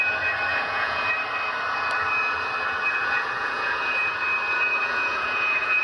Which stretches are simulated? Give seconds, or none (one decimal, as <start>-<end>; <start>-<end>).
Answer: 0.5-1.1; 3.0-4.1; 4.8-5.8